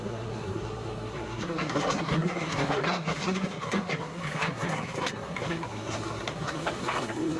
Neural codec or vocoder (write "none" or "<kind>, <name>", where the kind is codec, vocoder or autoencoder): codec, SNAC